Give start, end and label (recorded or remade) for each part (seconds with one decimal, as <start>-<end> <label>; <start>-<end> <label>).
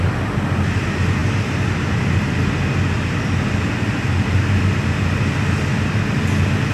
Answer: 0.0-6.7 recorded